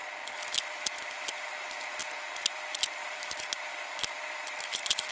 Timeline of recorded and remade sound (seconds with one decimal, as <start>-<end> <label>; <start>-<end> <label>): 0.0-0.6 recorded; 0.6-5.1 remade